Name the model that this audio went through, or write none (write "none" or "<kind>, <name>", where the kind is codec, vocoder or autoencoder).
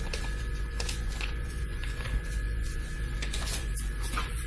vocoder, Vocos